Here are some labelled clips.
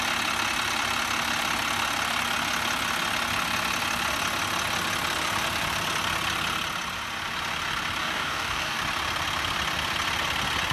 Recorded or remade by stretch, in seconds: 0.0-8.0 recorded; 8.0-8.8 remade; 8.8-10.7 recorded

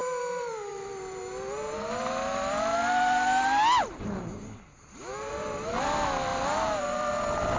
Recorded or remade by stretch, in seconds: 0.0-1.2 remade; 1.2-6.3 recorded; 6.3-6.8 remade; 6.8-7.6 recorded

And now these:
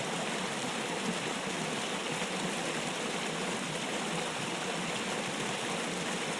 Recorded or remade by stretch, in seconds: 0.0-6.4 recorded